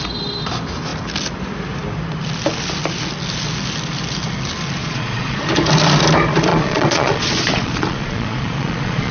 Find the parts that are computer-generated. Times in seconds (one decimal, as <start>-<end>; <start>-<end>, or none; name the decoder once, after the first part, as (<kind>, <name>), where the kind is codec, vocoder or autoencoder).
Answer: 4.8-5.4 (vocoder, Vocos); 6.5-9.1

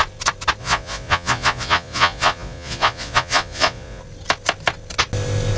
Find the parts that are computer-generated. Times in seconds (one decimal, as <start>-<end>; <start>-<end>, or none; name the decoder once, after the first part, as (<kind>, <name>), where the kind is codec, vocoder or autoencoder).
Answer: 0.6-4.0 (vocoder, Vocos)

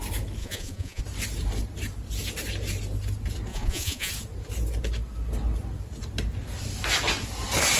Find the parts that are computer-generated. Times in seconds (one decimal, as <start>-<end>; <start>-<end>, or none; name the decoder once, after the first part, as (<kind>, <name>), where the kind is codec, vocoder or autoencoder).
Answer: 0.4-1.0 (vocoder, Vocos); 3.5-4.1

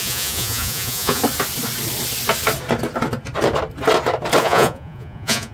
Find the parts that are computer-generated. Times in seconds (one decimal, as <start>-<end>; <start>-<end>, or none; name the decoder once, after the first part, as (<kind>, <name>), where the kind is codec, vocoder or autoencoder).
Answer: 0.0-1.2 (vocoder, Vocos); 4.4-5.5

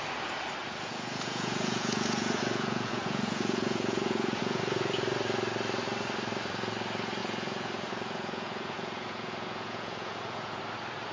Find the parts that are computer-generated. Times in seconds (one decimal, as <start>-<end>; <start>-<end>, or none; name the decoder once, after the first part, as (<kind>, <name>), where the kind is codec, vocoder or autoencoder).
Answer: 0.6-4.6 (vocoder, Vocos); 7.2-10.6

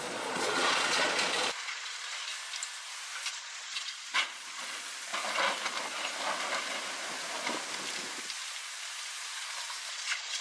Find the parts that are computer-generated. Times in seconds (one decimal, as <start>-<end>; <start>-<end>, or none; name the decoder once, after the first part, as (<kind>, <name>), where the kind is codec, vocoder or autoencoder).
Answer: 0.0-2.3 (vocoder, Vocos); 3.3-5.1; 9.9-10.4